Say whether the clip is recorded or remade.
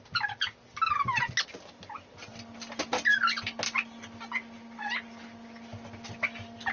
recorded